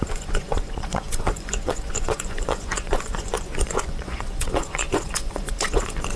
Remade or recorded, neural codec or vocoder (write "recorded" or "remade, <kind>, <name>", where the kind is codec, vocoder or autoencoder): remade, vocoder, Vocos